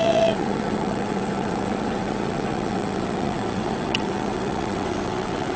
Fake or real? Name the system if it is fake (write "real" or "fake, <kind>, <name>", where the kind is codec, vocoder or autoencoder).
fake, vocoder, WaveNeXt